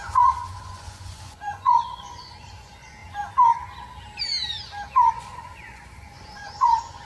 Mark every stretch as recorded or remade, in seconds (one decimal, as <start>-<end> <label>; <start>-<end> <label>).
0.0-3.0 remade; 3.0-5.1 recorded; 5.1-7.1 remade